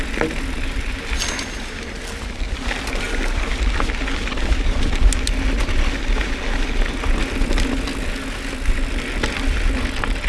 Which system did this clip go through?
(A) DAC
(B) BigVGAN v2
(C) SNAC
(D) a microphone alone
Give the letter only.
D